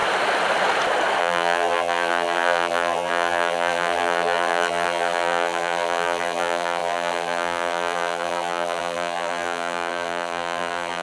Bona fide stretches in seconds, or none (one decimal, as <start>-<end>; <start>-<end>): 0.0-1.2